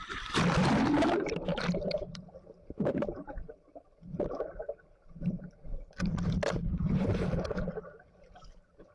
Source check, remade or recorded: remade